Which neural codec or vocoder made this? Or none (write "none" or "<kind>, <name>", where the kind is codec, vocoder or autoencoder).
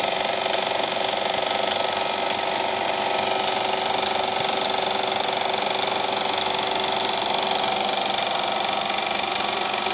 none